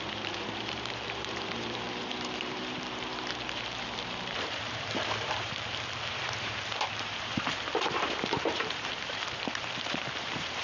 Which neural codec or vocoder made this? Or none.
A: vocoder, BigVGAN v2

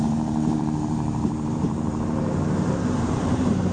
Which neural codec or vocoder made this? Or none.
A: vocoder, BigVGAN v2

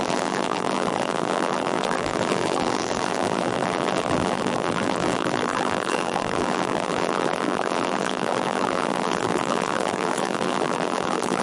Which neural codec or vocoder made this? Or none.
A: vocoder, BigVGAN v2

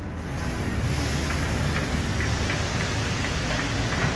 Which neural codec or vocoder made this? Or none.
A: none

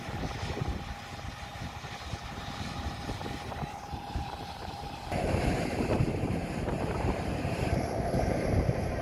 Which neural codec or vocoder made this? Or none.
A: vocoder, BigVGAN v2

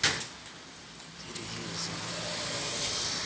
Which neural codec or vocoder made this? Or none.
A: none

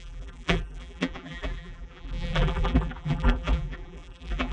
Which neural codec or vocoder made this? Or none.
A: vocoder, BigVGAN v2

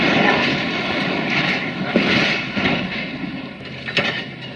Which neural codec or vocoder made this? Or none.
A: none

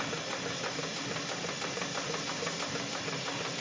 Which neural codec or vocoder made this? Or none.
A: none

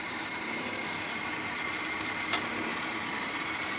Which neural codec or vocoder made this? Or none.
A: vocoder, BigVGAN v2